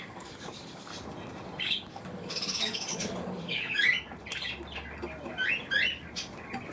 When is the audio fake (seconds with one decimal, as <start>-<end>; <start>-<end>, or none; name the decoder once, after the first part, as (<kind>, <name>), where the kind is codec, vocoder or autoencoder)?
0.0-0.9 (codec, DAC); 1.6-3.9